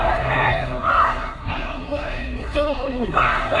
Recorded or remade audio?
remade